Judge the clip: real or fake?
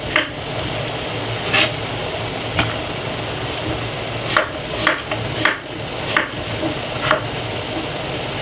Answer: real